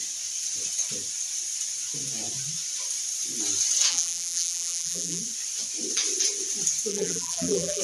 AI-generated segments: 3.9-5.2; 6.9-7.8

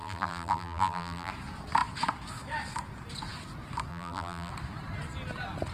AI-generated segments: 0.0-1.3; 3.9-4.5

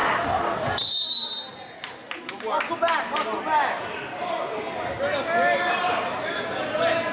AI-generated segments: none

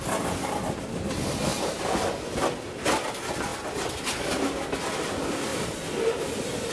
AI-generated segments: none

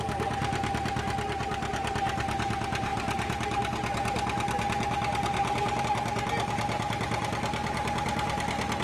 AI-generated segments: none